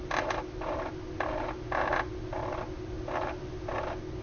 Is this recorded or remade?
recorded